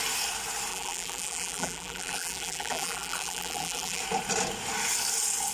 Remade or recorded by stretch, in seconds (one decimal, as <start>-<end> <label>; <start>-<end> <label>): 0.0-0.7 recorded; 0.7-4.0 remade; 4.0-5.5 recorded